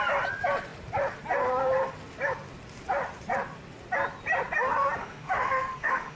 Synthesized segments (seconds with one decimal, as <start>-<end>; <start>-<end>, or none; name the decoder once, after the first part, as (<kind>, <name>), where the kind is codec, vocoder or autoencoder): 5.0-6.2 (autoencoder, DAC-VAE)